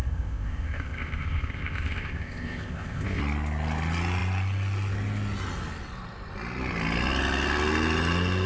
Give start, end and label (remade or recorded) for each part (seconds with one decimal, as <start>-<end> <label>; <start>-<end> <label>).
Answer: 0.0-3.2 remade; 3.2-8.5 recorded